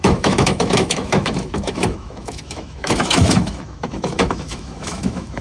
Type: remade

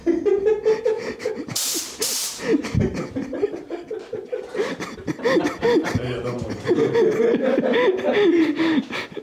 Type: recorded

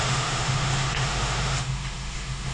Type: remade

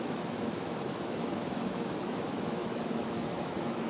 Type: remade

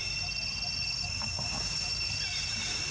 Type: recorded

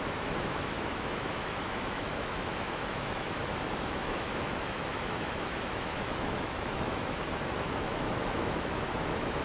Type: remade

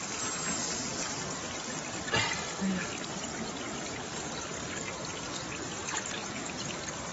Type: recorded